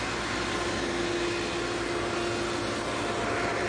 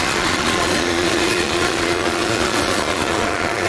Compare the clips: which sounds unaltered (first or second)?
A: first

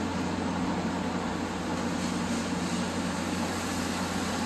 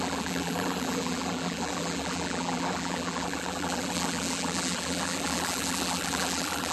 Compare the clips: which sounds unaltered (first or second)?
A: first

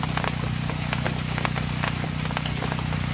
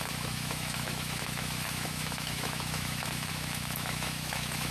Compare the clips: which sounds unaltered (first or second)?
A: first